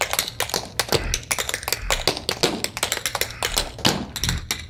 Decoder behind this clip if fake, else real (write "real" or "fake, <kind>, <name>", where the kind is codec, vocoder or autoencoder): real